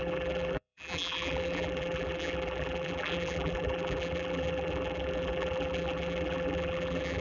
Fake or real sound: fake